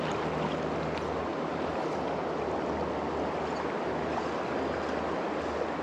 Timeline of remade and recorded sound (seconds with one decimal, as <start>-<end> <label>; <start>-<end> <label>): 0.0-5.8 recorded